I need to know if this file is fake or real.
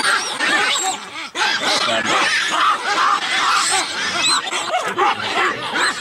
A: real